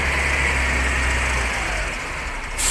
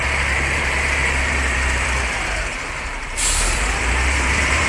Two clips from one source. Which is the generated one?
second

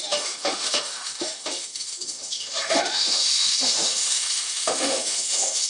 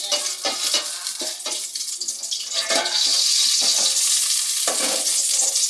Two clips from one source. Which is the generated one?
first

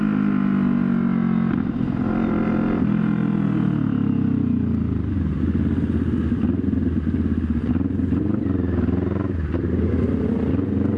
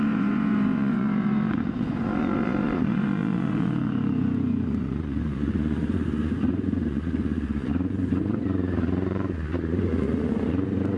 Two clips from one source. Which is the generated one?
second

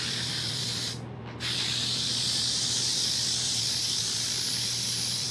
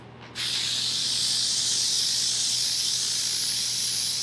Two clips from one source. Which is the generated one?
first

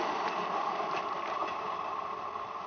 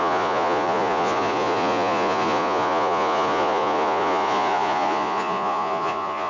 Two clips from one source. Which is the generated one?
second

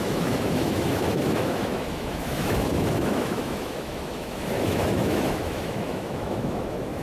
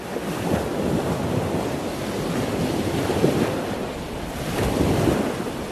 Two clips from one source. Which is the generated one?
first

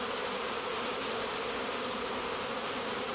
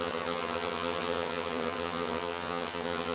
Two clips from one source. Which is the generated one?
second